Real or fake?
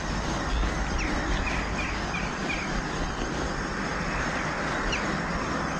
real